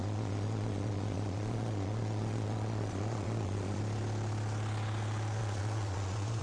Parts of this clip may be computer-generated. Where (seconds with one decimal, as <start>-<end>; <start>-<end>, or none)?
0.0-3.8; 5.4-6.4